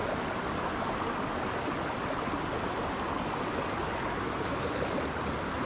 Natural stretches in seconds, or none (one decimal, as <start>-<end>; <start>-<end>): 0.0-5.7